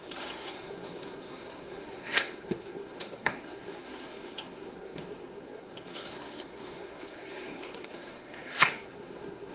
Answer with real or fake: fake